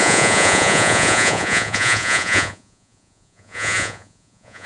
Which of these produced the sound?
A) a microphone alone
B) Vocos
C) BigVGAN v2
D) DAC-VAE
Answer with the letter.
B